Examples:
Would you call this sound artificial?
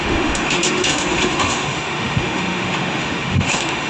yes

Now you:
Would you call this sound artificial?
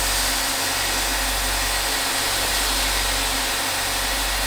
no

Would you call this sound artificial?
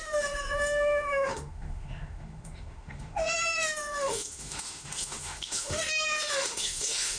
yes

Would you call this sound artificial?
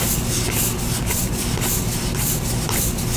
no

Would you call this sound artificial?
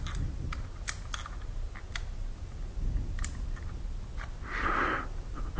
no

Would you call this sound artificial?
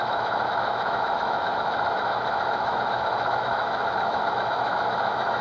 yes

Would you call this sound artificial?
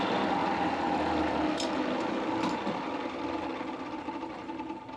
no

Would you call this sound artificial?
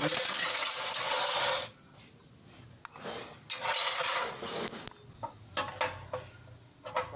no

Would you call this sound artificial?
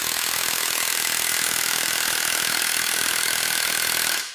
yes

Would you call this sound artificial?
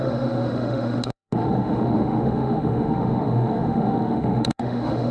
yes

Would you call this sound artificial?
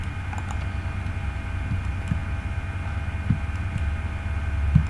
no